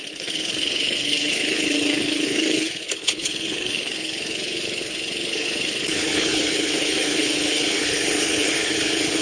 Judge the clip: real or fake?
fake